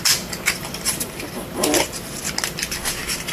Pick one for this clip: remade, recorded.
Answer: recorded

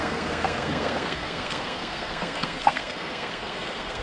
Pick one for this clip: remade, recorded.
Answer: remade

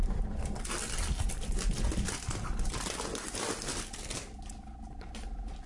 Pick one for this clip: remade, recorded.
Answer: recorded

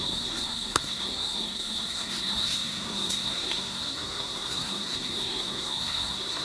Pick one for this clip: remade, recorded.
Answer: remade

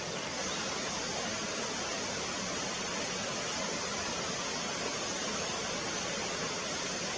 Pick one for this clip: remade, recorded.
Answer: recorded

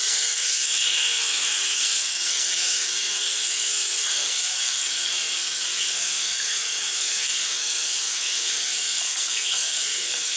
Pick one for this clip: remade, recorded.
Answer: remade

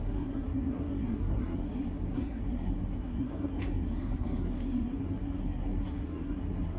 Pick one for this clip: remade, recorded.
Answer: remade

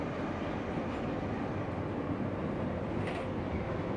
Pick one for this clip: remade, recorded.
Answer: recorded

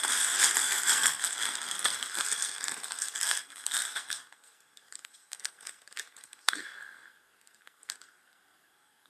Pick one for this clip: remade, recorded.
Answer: remade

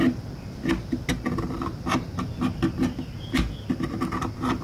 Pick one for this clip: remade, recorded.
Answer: recorded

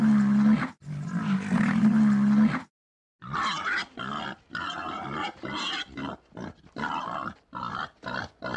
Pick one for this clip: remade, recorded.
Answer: recorded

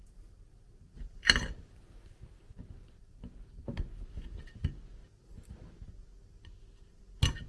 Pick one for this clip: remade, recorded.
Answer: recorded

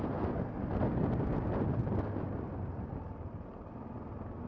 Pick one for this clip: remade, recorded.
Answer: recorded